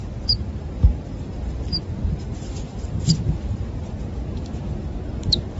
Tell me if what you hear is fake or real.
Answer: fake